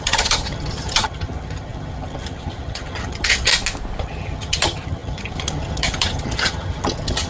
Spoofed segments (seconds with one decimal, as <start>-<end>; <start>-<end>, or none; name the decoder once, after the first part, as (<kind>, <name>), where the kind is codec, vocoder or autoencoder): 0.0-3.5 (vocoder, HiFi-GAN); 4.0-7.3